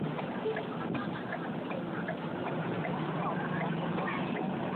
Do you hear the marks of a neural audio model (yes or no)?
no